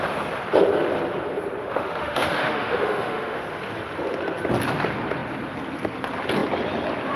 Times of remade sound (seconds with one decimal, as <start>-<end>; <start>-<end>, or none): 1.6-3.4